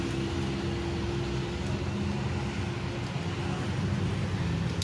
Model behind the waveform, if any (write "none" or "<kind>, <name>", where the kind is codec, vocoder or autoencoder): none